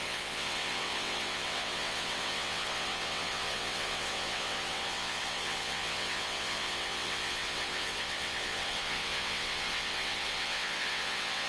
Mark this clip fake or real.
fake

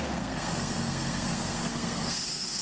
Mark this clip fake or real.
fake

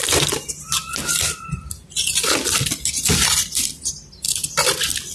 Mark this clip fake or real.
real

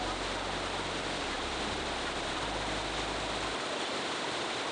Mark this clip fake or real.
real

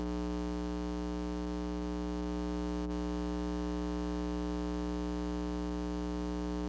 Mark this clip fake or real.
real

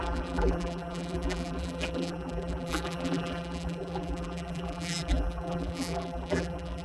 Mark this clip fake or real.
fake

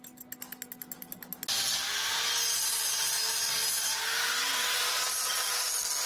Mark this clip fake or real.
real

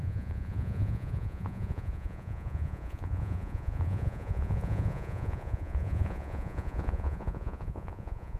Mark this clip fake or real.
fake